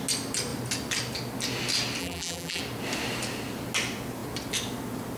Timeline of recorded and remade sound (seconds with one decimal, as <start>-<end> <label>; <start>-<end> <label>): 0.0-2.0 recorded; 2.0-2.6 remade; 2.6-5.2 recorded